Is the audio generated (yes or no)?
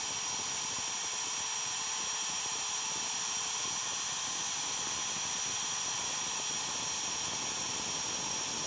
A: yes